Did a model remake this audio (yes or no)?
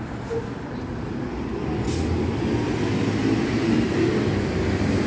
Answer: yes